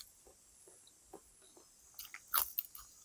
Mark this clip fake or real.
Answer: real